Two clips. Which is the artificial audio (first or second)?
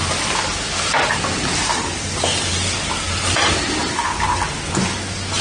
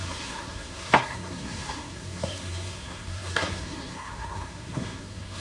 second